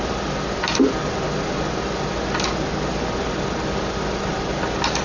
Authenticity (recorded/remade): recorded